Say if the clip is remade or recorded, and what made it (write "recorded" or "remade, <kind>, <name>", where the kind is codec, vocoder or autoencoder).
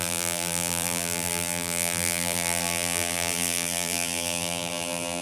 remade, vocoder, BigVGAN v2